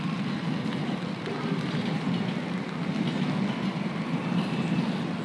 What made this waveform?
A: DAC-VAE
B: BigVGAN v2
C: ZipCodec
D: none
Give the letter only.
D